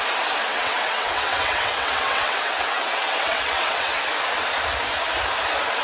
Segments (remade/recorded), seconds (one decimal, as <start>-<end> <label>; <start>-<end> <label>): 0.0-0.5 recorded; 0.5-4.0 remade; 4.0-5.8 recorded

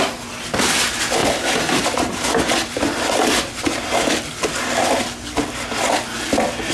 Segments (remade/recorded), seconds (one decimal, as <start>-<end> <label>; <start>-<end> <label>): 0.0-1.2 recorded; 1.2-4.9 remade; 4.9-6.7 recorded